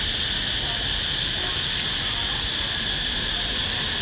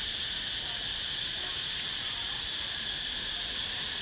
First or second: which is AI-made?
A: second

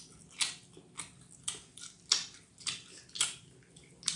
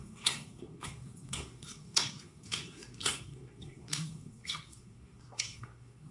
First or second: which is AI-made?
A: second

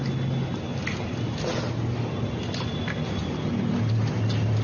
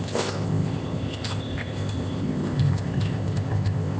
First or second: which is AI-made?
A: second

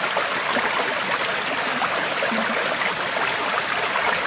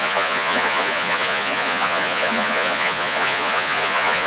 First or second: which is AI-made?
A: second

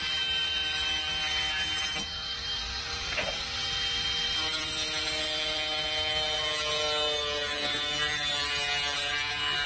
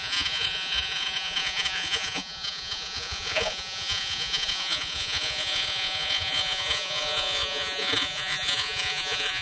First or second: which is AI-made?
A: second